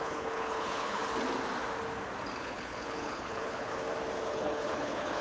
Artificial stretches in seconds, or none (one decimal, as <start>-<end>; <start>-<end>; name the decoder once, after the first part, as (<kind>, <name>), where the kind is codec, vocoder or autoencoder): 0.0-1.0 (codec, HILCodec); 2.4-3.7; 4.3-5.2